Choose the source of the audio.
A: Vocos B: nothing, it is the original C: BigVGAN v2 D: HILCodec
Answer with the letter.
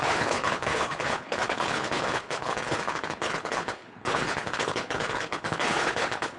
D